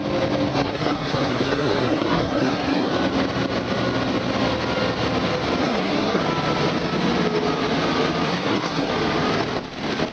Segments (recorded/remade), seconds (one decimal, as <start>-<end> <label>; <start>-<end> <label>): 0.0-0.5 recorded; 0.5-2.9 remade; 2.9-5.6 recorded; 5.6-6.2 remade; 6.2-8.3 recorded; 8.3-8.9 remade; 8.9-10.1 recorded